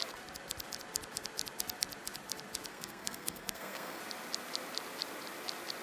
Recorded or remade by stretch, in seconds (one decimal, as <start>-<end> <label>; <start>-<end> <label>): 0.0-2.7 recorded; 2.7-4.0 remade; 4.0-5.8 recorded